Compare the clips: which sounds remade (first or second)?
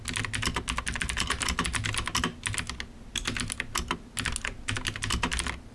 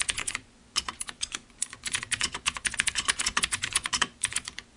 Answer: second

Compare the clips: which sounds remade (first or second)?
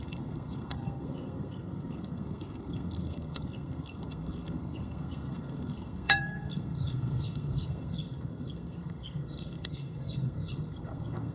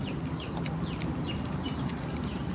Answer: first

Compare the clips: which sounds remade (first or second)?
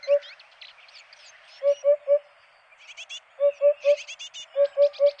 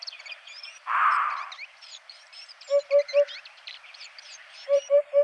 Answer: second